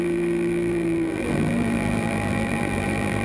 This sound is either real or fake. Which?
fake